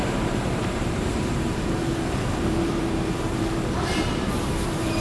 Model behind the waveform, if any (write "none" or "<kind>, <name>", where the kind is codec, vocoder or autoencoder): vocoder, BigVGAN v2